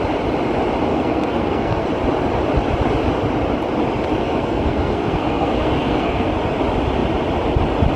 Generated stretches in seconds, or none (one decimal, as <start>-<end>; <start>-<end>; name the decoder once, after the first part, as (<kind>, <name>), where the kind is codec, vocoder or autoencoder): 0.9-1.9 (codec, SNAC); 4.2-6.3